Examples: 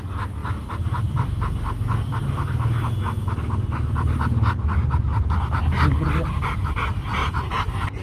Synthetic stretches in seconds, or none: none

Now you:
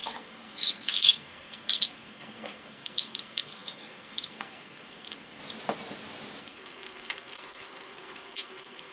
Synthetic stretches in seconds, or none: 0.0-5.4 (codec, SNAC); 6.4-8.9

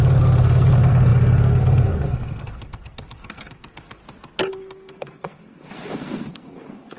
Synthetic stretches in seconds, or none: 0.0-4.0 (codec, SNAC); 4.5-7.0

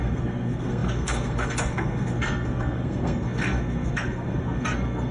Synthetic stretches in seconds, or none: 0.0-5.1 (codec, SNAC)